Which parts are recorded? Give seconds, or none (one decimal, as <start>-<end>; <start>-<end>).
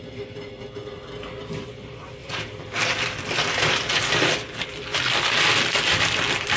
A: 0.0-2.2; 3.9-4.9; 5.4-6.6